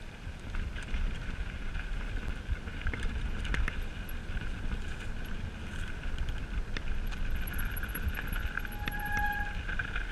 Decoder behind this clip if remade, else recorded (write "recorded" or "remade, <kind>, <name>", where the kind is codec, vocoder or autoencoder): recorded